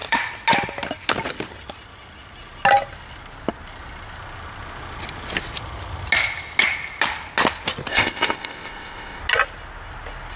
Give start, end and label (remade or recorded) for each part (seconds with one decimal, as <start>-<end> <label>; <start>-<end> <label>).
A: 0.0-7.9 recorded; 7.9-9.2 remade; 9.2-10.4 recorded